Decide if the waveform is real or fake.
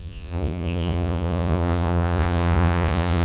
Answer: fake